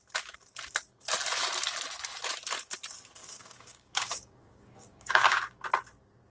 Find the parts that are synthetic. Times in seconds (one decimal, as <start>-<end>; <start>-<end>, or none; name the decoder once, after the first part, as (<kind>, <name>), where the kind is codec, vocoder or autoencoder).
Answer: 3.2-5.6 (codec, DAC)